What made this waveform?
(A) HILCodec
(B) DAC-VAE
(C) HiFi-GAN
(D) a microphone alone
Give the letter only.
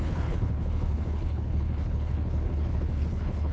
A